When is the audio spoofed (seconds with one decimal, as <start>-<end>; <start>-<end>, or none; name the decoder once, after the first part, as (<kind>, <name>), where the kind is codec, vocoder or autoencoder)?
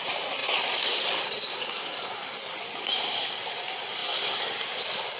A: none